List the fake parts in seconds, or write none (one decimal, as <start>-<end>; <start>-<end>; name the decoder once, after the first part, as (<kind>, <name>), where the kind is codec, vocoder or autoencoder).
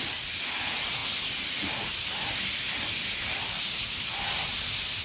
none